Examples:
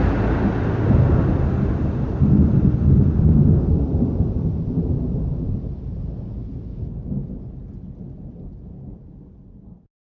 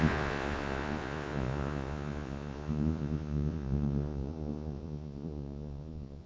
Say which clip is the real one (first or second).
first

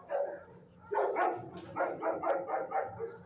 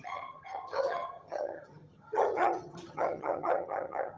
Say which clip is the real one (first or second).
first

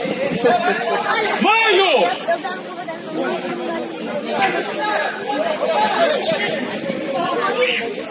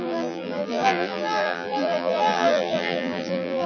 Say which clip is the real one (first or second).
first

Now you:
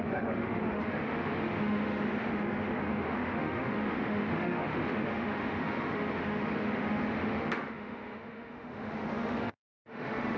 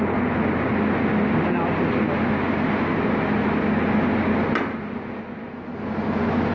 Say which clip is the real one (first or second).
second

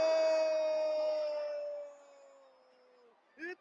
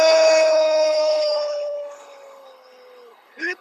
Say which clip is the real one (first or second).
first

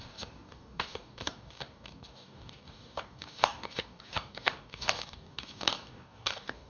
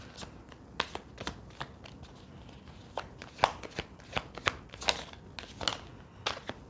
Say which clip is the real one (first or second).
second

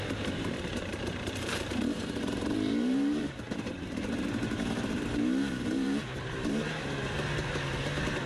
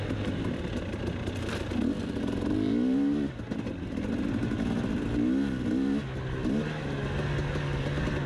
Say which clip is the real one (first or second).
second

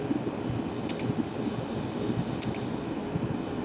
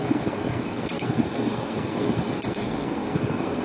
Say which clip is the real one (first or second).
first